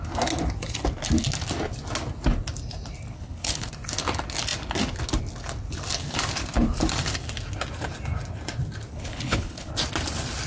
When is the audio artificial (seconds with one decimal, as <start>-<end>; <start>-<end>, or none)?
3.1-3.7; 8.9-9.7